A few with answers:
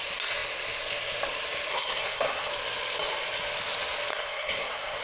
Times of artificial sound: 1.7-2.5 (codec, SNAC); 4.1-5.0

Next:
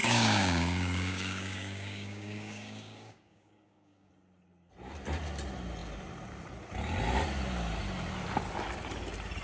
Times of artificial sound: 0.0-4.1 (codec, DAC)

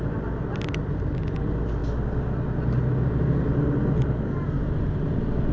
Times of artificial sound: none

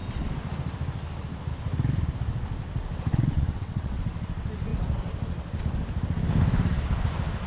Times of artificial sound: 3.1-4.0 (vocoder, WaveNeXt)

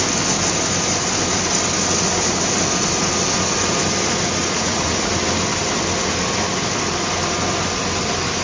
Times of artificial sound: 4.4-5.1 (vocoder, Vocos)

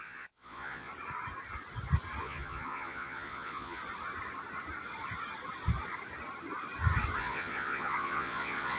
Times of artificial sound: 0.0-0.9 (vocoder, Vocos); 2.2-3.8; 7.2-8.8